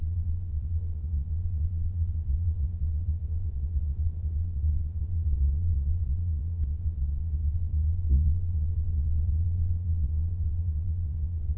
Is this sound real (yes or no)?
no